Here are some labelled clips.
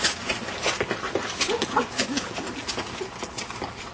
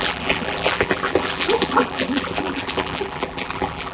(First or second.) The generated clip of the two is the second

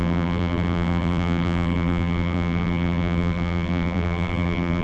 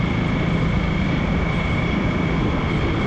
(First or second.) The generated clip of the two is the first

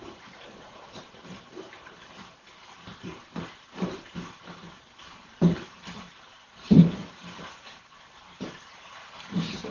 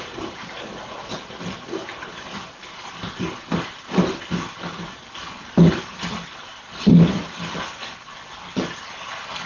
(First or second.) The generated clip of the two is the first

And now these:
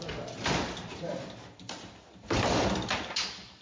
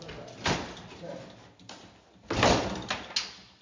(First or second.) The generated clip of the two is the first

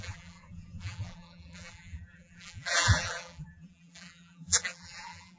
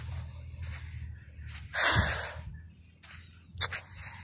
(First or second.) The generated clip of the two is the first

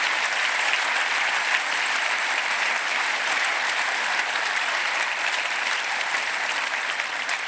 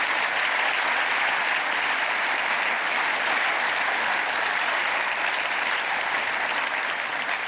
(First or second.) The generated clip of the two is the first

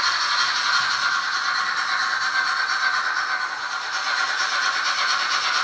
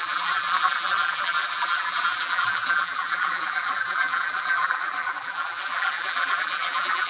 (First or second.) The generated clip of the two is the second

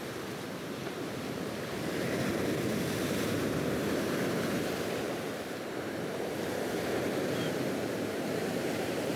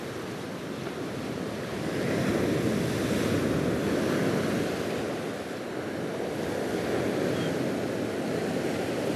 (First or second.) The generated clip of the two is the first